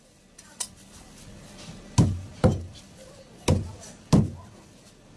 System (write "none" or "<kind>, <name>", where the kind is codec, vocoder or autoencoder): none